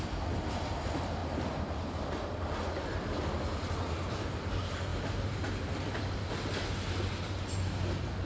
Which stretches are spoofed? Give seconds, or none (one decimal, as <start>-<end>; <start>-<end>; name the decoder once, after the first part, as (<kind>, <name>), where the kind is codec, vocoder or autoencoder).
1.2-2.0 (vocoder, BigVGAN v2)

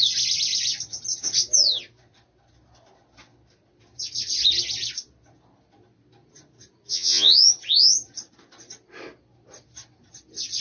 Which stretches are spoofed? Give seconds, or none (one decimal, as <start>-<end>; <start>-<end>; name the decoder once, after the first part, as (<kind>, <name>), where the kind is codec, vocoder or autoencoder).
6.9-7.5 (vocoder, Vocos)

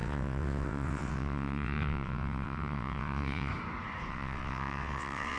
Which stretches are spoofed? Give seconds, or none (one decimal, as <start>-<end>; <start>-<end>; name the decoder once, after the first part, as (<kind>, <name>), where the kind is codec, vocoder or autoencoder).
0.0-3.5 (vocoder, WaveNeXt); 4.1-5.4